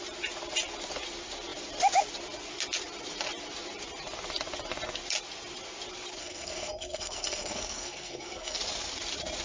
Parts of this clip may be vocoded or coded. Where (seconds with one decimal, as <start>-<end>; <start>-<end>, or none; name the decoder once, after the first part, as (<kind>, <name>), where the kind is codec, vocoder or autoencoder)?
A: 6.2-8.6 (codec, SNAC)